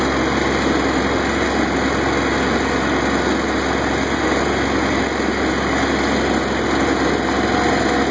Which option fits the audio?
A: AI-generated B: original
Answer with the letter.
B